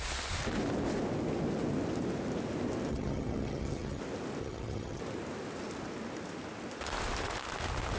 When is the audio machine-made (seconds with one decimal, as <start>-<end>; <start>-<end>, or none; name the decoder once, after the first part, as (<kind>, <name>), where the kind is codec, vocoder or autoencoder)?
2.9-4.0 (vocoder, HiFi-GAN); 4.4-5.0

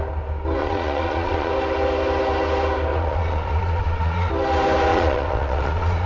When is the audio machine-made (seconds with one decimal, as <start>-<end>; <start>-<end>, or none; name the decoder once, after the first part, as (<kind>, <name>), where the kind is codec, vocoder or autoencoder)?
0.6-1.5 (vocoder, Vocos); 2.9-4.3; 4.9-6.1

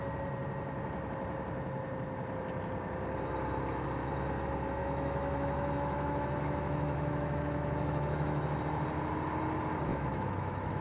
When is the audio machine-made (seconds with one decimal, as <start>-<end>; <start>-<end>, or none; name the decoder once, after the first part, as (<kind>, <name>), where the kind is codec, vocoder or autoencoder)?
4.8-8.6 (autoencoder, DAC-VAE); 9.9-10.8

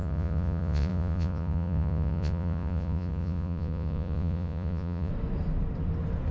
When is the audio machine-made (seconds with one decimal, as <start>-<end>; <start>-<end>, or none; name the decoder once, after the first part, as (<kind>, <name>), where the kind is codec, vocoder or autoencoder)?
0.0-5.1 (vocoder, Vocos)